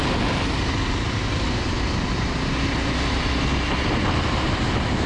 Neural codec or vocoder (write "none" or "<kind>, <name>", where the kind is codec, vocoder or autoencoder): none